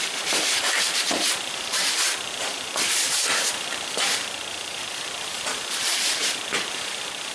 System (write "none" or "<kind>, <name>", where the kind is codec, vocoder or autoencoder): vocoder, BigVGAN v2